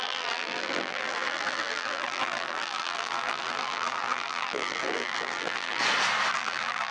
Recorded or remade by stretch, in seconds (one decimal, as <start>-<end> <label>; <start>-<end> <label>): 0.0-5.8 remade; 5.8-6.3 recorded; 6.3-6.9 remade